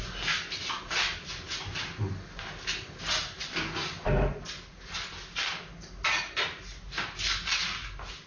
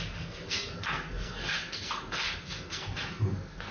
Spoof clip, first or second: second